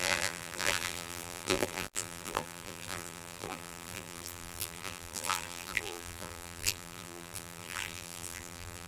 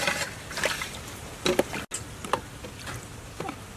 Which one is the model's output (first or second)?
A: first